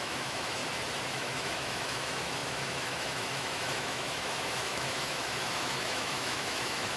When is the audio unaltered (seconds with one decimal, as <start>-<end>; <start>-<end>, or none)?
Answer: 0.6-1.1